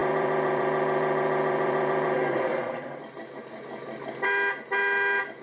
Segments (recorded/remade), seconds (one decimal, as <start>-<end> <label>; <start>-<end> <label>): 0.0-3.2 remade; 3.2-5.4 recorded